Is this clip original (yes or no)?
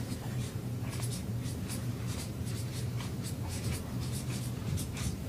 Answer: no